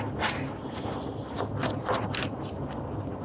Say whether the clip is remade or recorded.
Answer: recorded